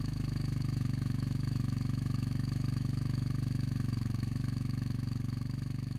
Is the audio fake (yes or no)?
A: yes